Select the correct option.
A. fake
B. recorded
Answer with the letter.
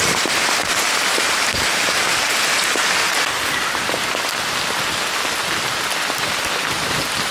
B